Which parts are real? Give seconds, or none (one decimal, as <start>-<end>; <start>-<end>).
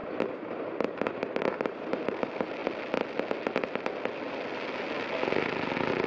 2.2-6.1